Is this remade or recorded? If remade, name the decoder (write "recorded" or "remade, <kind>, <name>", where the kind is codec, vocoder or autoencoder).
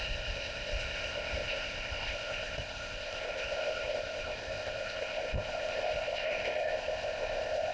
remade, codec, ZipCodec